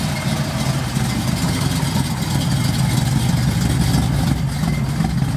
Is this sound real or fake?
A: real